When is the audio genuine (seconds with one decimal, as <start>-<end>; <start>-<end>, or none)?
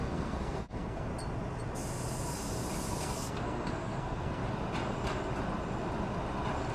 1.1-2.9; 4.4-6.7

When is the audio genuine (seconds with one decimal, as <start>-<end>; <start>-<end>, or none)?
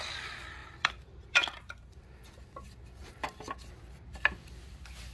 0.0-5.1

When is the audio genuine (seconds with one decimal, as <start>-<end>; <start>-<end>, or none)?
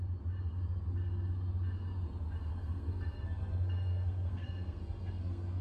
0.0-2.5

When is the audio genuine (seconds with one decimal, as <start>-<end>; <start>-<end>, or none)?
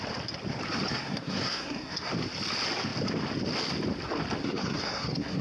0.0-0.9; 2.1-4.4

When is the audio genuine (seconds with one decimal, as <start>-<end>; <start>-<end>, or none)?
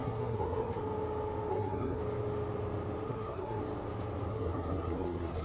0.8-1.5; 2.0-3.1; 3.6-4.3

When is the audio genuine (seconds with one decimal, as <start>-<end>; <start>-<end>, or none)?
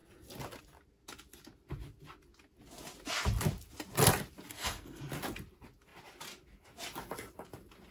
0.0-4.5; 5.0-7.9